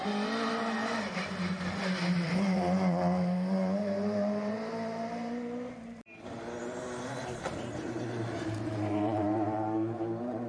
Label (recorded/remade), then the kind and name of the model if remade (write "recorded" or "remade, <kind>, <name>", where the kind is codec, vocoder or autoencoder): remade, vocoder, BigVGAN v2